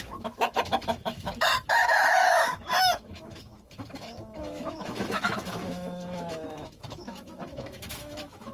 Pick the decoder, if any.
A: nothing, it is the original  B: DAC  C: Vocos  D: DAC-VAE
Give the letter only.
D